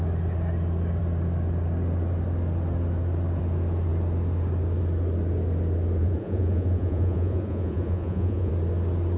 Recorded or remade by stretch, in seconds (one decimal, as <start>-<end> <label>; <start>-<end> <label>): 0.0-6.0 recorded; 6.0-8.5 remade; 8.5-9.2 recorded